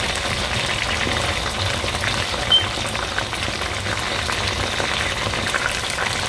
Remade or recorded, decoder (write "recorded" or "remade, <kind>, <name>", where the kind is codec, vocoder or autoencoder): recorded